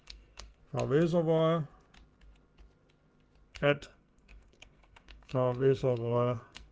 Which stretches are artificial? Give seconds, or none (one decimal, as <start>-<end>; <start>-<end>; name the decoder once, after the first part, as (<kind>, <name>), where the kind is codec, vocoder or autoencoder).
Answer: 0.0-0.6 (codec, SNAC); 3.5-6.7